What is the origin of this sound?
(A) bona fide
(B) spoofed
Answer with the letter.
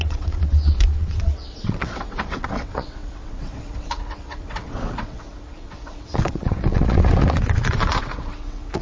B